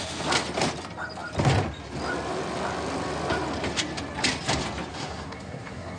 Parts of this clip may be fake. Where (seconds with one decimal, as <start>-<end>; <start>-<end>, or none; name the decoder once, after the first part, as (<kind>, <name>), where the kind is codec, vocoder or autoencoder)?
4.9-6.0 (codec, SNAC)